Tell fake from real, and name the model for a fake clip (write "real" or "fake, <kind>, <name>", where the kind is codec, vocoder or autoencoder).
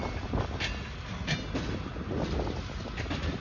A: real